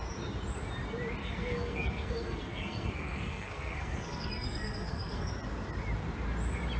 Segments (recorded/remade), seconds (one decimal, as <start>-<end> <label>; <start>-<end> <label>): 0.0-1.2 recorded; 1.2-5.3 remade; 5.3-6.8 recorded